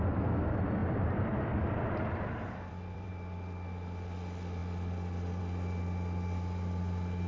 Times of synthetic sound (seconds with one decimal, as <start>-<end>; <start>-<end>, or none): 0.8-3.1